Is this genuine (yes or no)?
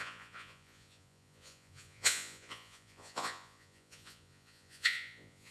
no